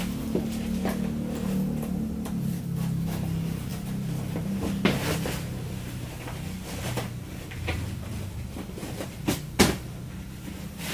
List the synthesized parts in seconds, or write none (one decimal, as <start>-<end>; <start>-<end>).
none